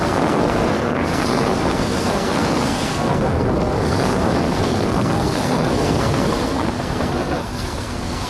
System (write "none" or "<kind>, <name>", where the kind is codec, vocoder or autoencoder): codec, SNAC